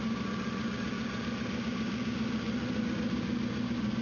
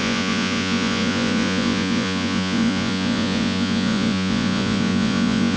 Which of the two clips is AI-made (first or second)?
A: second